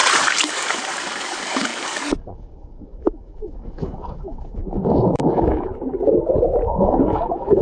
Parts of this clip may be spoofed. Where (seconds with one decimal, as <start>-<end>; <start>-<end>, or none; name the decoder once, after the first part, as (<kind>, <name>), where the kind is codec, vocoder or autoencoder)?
0.0-5.7 (codec, DAC); 6.7-7.6